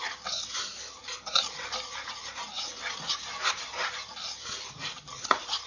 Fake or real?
real